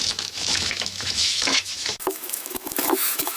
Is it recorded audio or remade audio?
remade